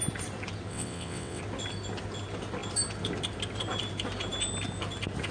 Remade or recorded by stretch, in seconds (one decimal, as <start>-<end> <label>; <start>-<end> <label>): 0.0-0.7 recorded; 0.7-1.4 remade; 1.4-5.3 recorded